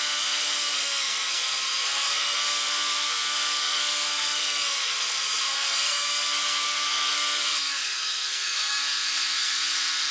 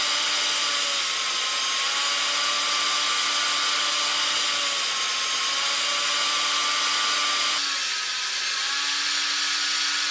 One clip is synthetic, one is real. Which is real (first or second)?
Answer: second